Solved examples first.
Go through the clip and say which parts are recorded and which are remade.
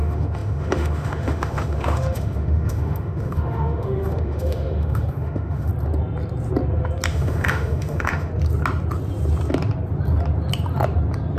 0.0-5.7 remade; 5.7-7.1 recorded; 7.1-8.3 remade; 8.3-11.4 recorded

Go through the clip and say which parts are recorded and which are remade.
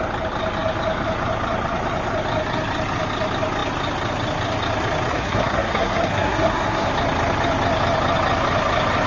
0.0-5.1 recorded; 5.1-6.9 remade; 6.9-9.1 recorded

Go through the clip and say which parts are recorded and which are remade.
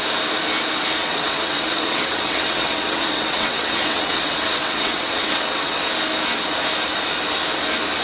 0.0-1.0 recorded; 1.0-5.8 remade; 5.8-8.0 recorded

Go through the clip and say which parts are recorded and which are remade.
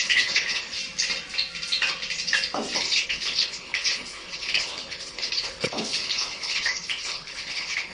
0.0-0.8 remade; 0.8-2.8 recorded; 2.8-7.9 remade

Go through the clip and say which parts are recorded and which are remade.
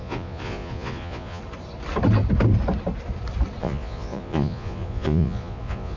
0.0-1.4 remade; 1.4-3.6 recorded; 3.6-6.0 remade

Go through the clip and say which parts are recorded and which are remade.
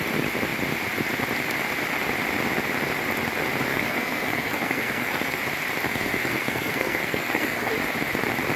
0.0-3.7 recorded; 3.7-5.4 remade; 5.4-5.9 recorded; 5.9-7.7 remade; 7.7-8.6 recorded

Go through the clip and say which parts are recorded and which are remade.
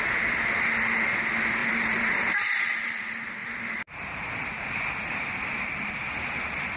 0.0-1.6 recorded; 1.6-2.5 remade; 2.5-3.4 recorded; 3.4-4.7 remade; 4.7-6.8 recorded